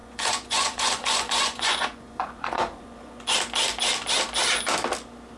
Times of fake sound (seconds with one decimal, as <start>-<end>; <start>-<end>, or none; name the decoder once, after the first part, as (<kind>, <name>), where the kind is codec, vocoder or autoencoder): 0.0-3.2 (vocoder, Vocos)